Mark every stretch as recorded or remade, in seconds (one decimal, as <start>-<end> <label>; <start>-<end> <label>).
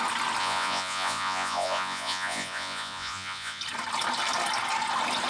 0.0-0.4 recorded; 0.4-3.6 remade; 3.6-5.3 recorded